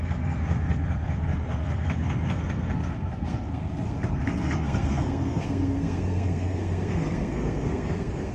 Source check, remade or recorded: remade